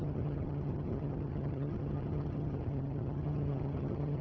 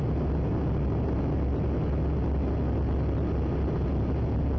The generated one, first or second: first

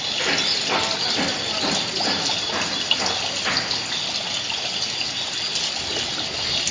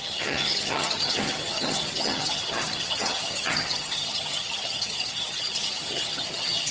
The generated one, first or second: second